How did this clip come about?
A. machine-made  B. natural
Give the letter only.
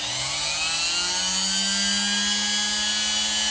B